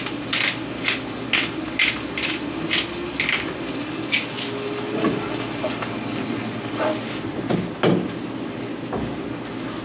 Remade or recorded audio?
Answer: recorded